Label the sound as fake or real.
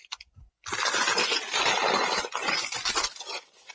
real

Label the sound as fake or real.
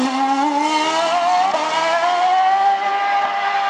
real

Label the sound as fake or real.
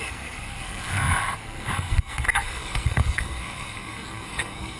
fake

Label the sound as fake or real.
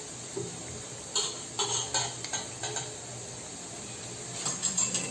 real